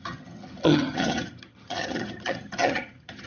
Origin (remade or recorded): remade